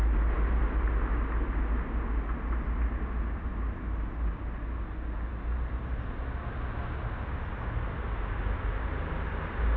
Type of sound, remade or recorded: recorded